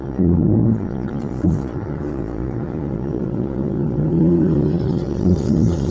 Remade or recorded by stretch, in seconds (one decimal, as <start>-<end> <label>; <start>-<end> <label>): 0.0-5.9 remade